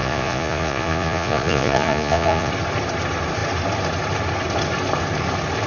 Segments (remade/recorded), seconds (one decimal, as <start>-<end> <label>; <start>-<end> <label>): 0.0-2.5 remade; 2.5-5.7 recorded